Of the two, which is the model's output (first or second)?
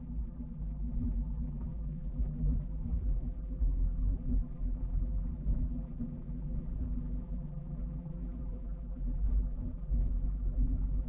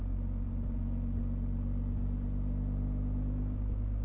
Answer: first